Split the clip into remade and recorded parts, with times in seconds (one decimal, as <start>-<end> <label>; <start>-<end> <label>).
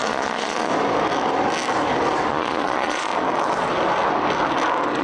0.0-0.7 remade; 0.7-2.3 recorded; 2.3-3.1 remade; 3.1-5.0 recorded